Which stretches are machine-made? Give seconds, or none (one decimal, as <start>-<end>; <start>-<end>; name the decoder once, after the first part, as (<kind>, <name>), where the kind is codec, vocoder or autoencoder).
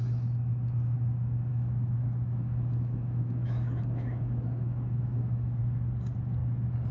1.5-5.6 (autoencoder, DAC-VAE)